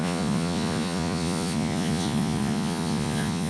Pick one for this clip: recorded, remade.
remade